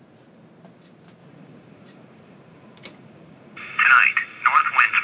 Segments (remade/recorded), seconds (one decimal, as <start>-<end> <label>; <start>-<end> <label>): 0.0-1.2 recorded; 1.2-3.9 remade; 3.9-5.0 recorded